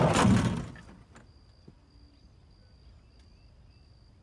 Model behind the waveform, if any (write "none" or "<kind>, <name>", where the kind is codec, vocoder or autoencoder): none